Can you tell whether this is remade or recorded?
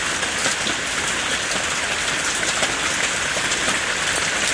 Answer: recorded